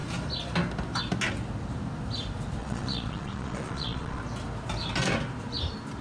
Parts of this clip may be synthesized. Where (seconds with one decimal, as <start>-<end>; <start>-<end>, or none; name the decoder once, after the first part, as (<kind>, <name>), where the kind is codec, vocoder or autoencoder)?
2.6-4.2 (vocoder, Vocos)